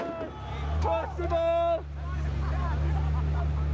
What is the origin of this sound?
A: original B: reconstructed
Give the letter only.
A